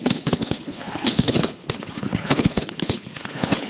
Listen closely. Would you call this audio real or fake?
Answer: fake